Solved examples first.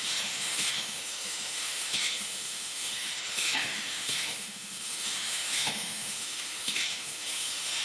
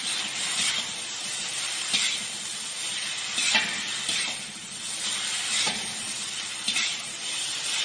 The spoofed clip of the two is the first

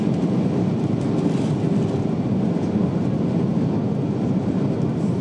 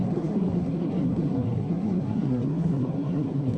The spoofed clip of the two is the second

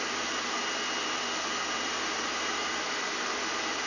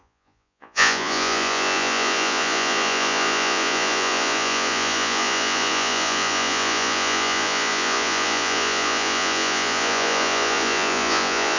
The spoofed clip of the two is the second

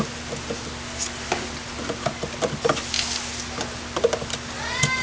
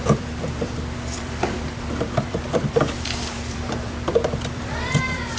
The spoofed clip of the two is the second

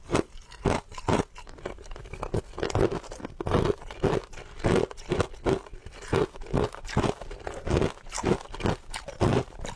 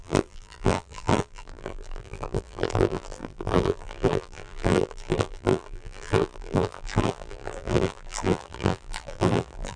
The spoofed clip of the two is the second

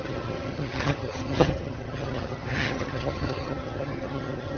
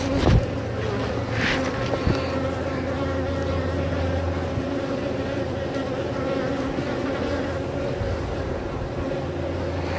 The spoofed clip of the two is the first